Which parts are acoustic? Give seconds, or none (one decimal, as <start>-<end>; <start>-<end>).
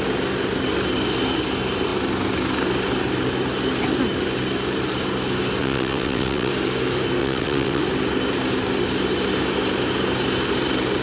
0.0-5.6; 6.5-7.2; 7.8-11.0